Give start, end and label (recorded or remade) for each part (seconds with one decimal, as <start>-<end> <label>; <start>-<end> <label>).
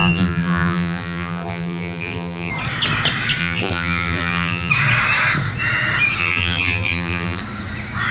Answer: 0.0-2.5 remade; 2.5-3.4 recorded; 3.4-4.7 remade; 4.7-6.2 recorded; 6.2-7.4 remade; 7.4-8.1 recorded